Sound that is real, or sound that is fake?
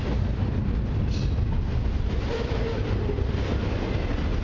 real